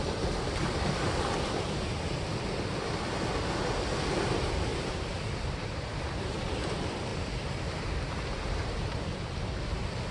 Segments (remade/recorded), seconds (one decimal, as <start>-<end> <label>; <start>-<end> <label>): 0.0-4.7 recorded; 4.7-5.9 remade; 5.9-7.1 recorded; 7.1-9.2 remade; 9.2-10.1 recorded